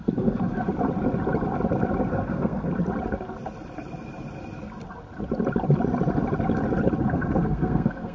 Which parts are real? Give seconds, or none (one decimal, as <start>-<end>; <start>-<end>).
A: 0.7-2.1; 2.7-7.1